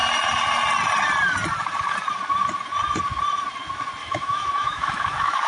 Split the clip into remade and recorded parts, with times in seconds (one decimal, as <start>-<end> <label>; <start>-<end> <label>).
0.0-4.0 recorded; 4.0-5.5 remade